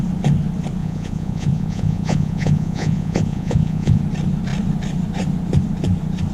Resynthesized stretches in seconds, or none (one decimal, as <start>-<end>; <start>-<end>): 0.8-4.0